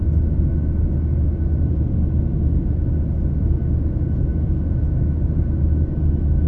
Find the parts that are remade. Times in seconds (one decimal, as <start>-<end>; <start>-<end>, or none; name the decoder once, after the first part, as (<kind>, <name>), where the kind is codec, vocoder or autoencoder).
none

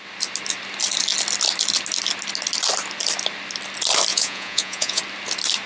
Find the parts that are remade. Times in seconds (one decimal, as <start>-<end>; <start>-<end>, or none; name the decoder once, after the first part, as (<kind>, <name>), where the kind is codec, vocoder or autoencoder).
4.1-5.0 (vocoder, Vocos)